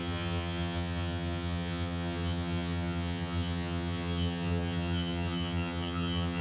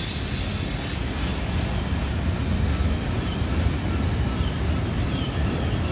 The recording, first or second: second